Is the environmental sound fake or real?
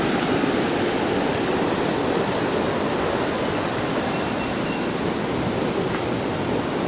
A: real